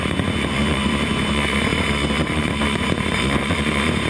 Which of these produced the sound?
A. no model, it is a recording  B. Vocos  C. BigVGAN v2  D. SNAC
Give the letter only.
B